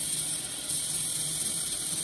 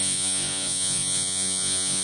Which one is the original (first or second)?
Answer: first